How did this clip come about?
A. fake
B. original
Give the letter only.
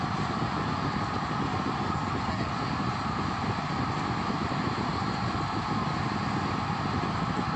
B